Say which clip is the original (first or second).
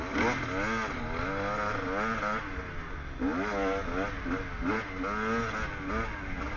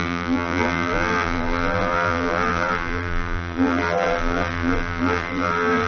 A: first